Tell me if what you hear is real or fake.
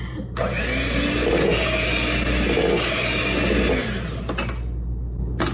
real